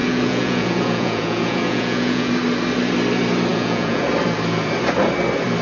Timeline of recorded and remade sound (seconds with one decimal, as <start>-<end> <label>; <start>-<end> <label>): 0.0-2.3 remade; 2.3-3.5 recorded; 3.5-4.1 remade; 4.1-5.6 recorded